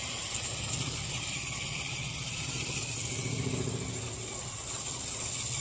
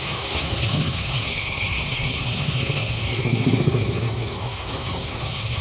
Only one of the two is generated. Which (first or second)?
second